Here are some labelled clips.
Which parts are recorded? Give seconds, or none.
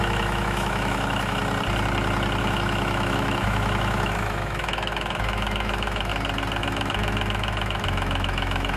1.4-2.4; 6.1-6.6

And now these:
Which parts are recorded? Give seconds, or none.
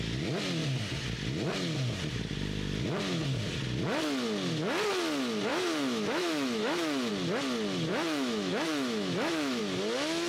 0.0-5.5; 7.1-7.9; 9.6-10.3